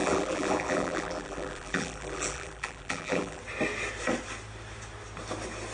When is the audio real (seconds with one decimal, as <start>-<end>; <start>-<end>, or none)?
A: 3.4-5.7